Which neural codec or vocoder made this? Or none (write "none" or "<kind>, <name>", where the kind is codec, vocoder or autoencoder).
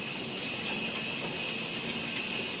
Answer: none